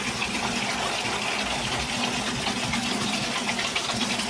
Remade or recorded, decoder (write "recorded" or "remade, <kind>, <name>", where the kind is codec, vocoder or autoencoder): recorded